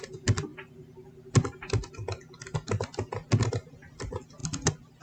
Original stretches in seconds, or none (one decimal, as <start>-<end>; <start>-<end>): 0.0-5.0